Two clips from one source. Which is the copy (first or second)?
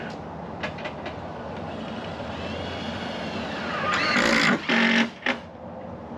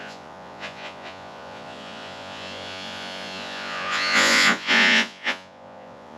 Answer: second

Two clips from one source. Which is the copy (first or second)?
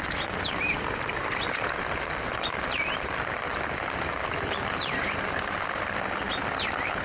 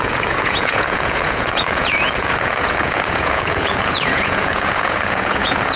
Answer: second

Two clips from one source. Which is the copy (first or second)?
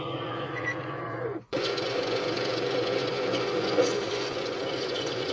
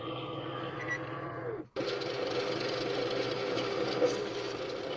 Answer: first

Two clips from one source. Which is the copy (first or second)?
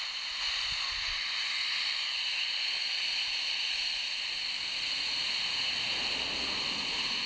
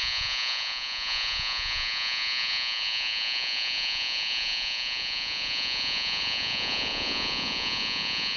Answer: second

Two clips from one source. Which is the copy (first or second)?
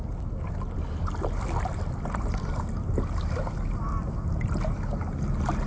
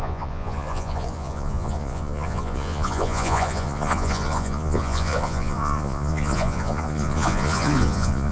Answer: second